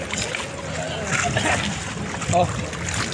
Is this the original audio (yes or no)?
yes